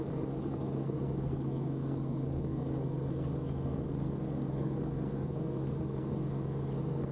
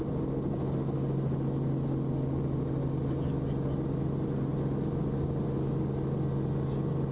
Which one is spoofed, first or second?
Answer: first